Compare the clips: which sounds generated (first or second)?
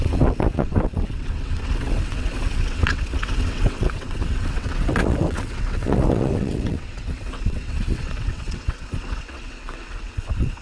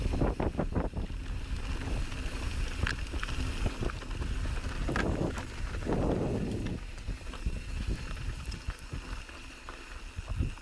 first